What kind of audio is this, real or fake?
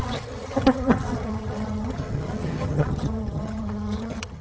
fake